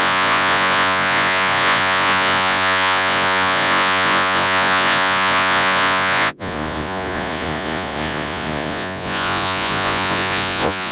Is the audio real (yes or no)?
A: no